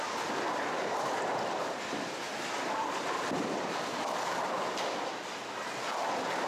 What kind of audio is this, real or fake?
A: real